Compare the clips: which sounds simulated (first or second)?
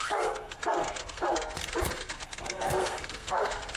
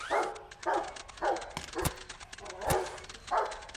first